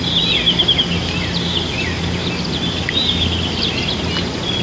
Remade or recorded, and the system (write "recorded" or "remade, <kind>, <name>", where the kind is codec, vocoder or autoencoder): recorded